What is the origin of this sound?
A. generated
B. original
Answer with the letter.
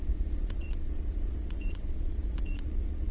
A